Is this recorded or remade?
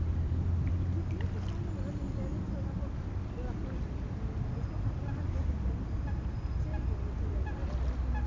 recorded